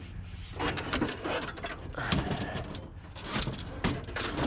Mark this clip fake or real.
real